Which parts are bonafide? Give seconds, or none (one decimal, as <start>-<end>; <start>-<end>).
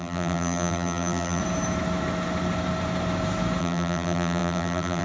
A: 1.4-3.6